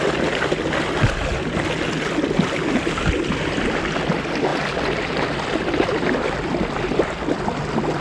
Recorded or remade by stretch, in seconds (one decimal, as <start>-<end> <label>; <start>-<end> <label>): 0.0-8.0 recorded